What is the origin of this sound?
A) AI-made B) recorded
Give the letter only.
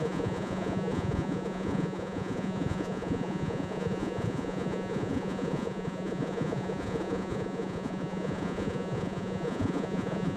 A